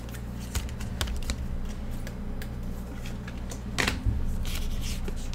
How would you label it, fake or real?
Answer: real